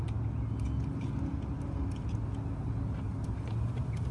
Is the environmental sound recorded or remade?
recorded